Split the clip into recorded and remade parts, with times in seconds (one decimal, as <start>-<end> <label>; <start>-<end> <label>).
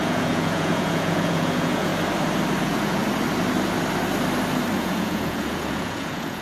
0.0-1.9 remade; 1.9-2.6 recorded; 2.6-3.0 remade; 3.0-4.8 recorded; 4.8-6.4 remade